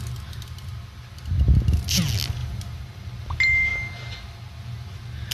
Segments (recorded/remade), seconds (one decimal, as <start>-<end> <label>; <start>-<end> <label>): 0.0-5.3 recorded